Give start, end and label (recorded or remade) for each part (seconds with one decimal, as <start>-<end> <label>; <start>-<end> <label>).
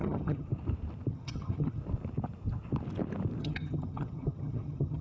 0.0-0.5 remade; 0.5-1.1 recorded; 1.1-1.8 remade; 1.8-3.4 recorded; 3.4-5.0 remade